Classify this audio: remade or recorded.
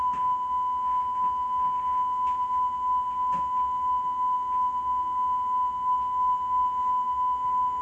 recorded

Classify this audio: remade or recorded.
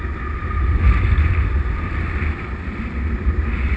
recorded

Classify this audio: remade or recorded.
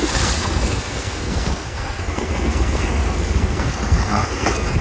remade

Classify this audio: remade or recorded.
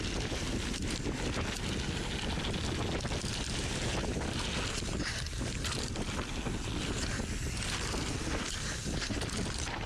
recorded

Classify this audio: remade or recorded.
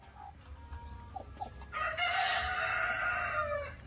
recorded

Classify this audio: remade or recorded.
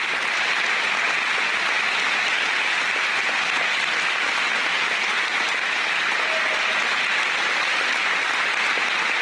recorded